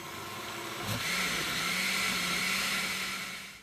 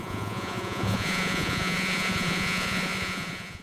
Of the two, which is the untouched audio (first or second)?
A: first